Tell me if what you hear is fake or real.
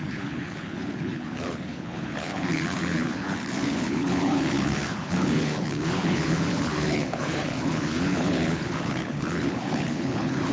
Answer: fake